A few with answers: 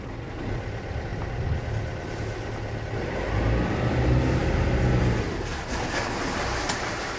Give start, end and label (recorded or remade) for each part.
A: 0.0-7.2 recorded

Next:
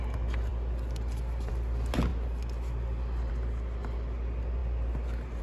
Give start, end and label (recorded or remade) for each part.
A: 0.0-5.4 recorded

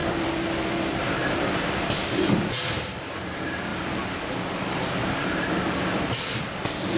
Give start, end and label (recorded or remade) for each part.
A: 0.0-1.0 remade; 1.0-7.0 recorded

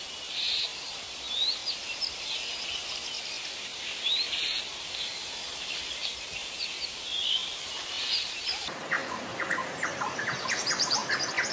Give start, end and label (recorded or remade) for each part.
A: 0.0-7.4 recorded; 7.4-8.4 remade; 8.4-9.0 recorded; 9.0-11.1 remade; 11.1-11.5 recorded

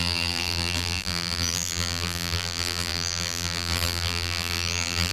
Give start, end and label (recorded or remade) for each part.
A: 0.0-5.1 remade

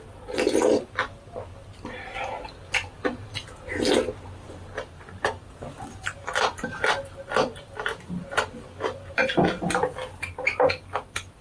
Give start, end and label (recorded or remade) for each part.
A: 0.0-8.2 remade; 8.2-9.1 recorded; 9.1-11.4 remade

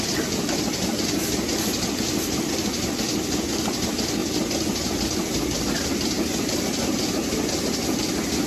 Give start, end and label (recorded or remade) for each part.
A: 0.0-8.5 recorded